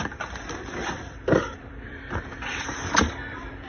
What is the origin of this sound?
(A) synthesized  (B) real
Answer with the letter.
A